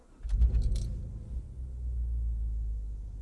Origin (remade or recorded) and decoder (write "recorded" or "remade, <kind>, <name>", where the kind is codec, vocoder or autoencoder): recorded